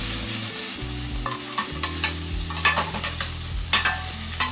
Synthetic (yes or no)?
no